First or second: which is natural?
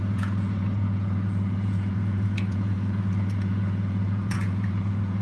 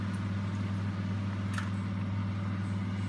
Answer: second